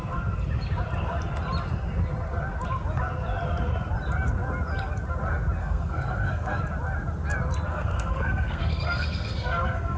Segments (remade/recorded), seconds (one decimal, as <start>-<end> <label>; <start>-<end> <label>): 0.0-5.6 recorded; 5.6-6.6 remade; 6.6-7.7 recorded; 7.7-10.0 remade